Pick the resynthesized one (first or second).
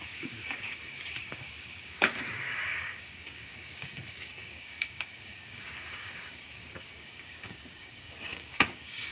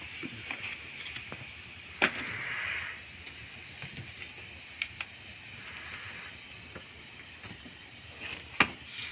first